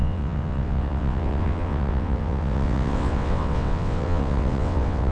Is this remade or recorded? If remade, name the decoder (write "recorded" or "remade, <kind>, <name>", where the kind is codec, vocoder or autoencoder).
remade, vocoder, WaveNeXt